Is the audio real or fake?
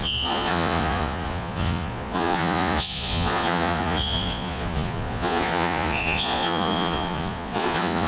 fake